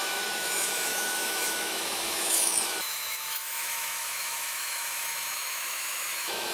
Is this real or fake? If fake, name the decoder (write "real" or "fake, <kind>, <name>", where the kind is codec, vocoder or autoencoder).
fake, autoencoder, DAC-VAE